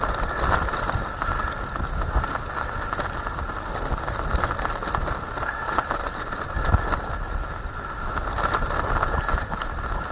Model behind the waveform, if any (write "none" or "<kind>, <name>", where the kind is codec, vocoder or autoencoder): none